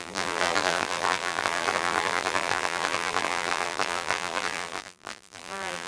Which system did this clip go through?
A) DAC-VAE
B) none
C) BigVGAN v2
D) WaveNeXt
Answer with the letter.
C